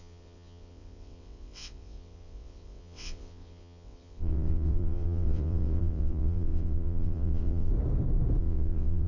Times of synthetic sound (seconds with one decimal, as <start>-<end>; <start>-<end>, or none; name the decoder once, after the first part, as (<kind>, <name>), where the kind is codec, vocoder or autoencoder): 0.0-7.7 (vocoder, WaveNeXt); 8.4-9.1